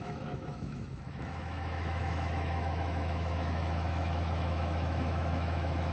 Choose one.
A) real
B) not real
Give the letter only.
B